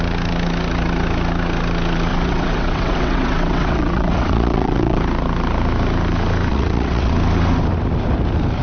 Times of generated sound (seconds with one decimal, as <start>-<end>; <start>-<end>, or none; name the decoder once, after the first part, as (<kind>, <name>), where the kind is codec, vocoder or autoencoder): 2.1-5.0 (vocoder, WaveNeXt); 6.5-7.1